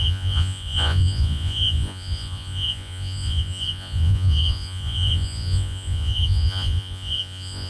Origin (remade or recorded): remade